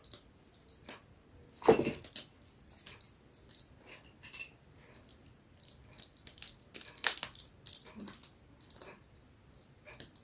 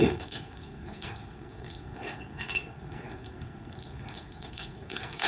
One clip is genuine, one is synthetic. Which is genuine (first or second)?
first